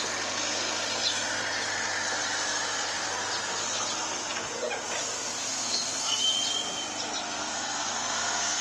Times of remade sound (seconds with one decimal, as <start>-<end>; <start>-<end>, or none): 5.5-6.2; 7.4-8.6